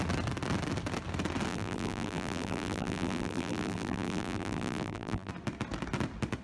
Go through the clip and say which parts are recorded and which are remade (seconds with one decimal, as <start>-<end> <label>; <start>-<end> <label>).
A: 0.0-1.5 recorded; 1.5-5.3 remade; 5.3-6.4 recorded